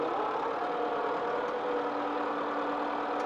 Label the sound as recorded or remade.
recorded